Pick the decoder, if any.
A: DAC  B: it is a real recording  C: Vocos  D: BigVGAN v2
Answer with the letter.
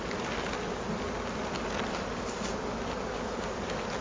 B